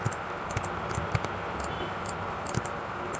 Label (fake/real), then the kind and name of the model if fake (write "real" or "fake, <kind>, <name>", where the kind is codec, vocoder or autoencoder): real